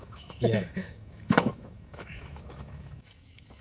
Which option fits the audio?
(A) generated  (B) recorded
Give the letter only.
A